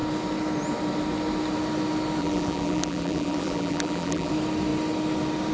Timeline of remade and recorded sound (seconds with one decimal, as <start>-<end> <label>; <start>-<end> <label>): 0.0-2.2 recorded; 2.2-4.3 remade; 4.3-5.5 recorded